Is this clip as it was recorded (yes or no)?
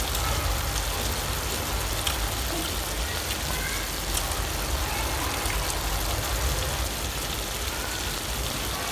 yes